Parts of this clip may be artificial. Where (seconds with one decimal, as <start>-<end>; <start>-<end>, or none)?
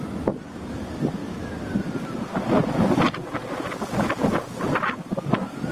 0.0-1.2; 4.6-5.7